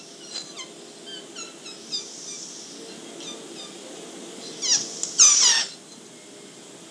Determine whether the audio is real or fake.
real